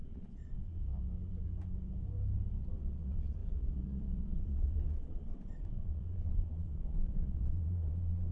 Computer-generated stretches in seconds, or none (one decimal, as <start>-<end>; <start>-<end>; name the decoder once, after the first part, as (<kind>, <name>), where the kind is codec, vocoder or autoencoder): 0.0-0.8 (vocoder, Vocos); 2.6-8.3